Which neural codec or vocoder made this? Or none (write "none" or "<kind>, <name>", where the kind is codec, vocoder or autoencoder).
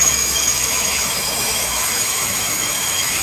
autoencoder, DAC-VAE